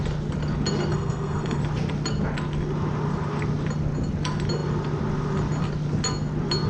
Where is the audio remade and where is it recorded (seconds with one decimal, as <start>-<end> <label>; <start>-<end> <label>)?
0.0-0.9 recorded; 0.9-1.6 remade; 1.6-6.7 recorded